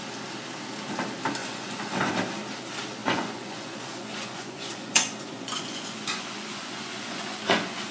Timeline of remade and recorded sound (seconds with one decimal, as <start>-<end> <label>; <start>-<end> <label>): 0.0-1.4 recorded; 1.4-2.1 remade; 2.1-3.0 recorded; 3.0-7.9 remade

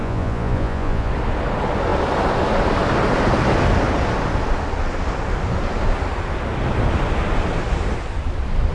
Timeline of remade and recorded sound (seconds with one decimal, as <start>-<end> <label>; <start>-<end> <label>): 0.0-1.1 remade; 1.1-8.7 recorded